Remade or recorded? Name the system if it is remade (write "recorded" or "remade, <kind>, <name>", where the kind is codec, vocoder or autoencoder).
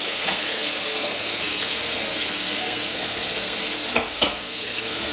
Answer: remade, codec, SNAC